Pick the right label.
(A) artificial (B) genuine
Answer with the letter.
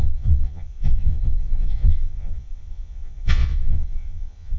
A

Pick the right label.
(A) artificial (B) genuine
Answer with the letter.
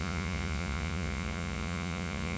A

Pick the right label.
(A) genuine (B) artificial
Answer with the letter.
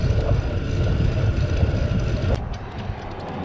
A